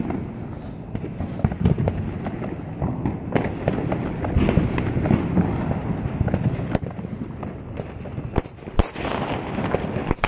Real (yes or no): yes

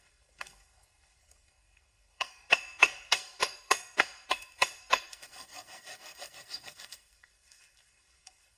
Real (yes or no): no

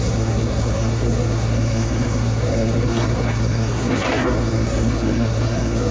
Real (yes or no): no